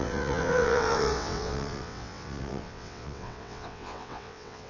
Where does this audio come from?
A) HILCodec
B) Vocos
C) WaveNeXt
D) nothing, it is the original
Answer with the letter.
C